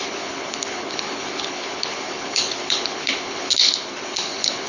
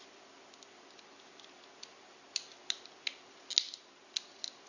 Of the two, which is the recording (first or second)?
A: second